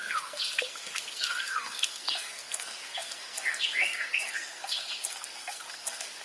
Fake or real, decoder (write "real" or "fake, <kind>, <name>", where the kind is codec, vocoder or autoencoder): fake, codec, SNAC